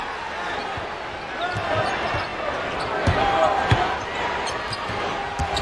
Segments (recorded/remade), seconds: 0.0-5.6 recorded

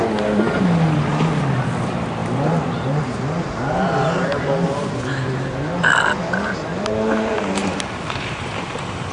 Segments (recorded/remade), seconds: 0.0-2.2 recorded; 2.2-5.5 remade; 5.5-6.7 recorded; 6.7-9.1 remade

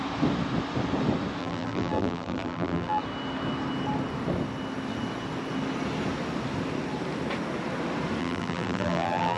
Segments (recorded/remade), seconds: 0.0-1.4 recorded; 1.4-3.0 remade; 3.0-8.2 recorded; 8.2-9.4 remade